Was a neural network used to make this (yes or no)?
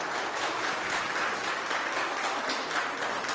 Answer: no